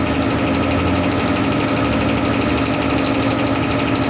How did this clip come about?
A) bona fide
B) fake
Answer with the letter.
A